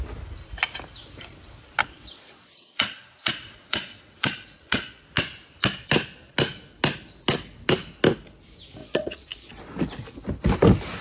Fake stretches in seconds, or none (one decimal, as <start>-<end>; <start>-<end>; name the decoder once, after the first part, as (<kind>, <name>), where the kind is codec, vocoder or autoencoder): 1.8-5.0 (vocoder, Vocos); 8.8-9.5